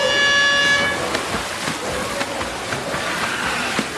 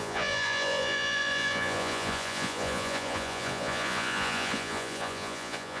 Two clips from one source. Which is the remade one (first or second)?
second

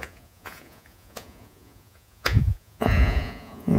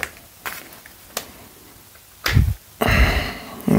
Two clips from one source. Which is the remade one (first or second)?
first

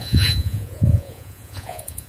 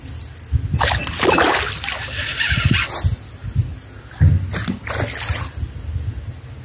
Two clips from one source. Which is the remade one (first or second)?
first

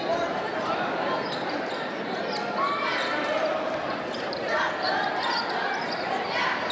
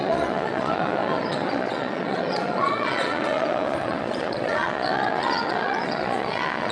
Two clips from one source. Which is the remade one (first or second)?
second